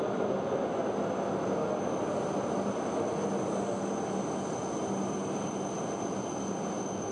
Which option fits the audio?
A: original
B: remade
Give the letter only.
A